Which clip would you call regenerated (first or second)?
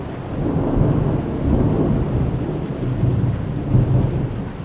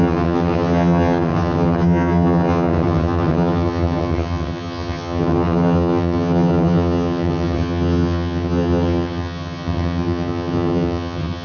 second